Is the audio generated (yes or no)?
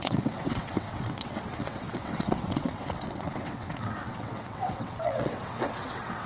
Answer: yes